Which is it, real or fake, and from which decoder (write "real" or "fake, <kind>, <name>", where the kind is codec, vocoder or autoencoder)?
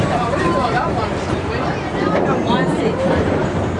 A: fake, vocoder, BigVGAN v2